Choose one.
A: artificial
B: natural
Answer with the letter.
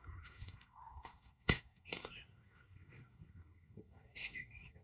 A